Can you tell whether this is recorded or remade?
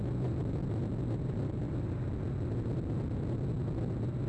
recorded